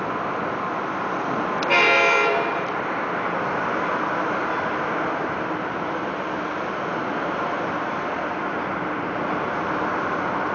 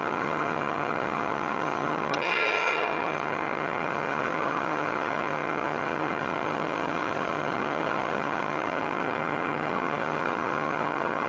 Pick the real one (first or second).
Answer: first